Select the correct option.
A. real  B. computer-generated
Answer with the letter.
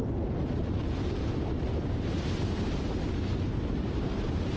B